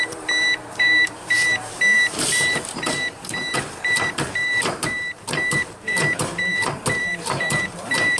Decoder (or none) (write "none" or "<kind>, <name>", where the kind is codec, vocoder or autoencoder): vocoder, BigVGAN v2